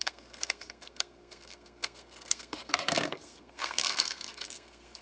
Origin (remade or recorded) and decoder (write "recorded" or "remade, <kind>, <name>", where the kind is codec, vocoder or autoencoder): remade, codec, SNAC